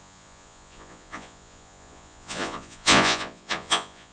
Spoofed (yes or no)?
yes